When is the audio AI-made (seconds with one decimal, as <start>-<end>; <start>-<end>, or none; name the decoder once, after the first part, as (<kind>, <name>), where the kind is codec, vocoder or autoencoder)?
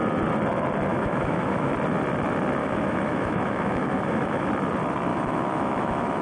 0.9-1.7 (autoencoder, DAC-VAE); 2.6-4.5; 5.1-6.2